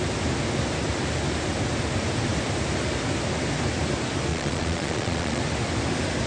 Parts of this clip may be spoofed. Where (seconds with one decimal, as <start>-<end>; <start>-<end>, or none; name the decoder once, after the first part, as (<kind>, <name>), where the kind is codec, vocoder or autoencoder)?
4.3-5.4 (vocoder, Vocos)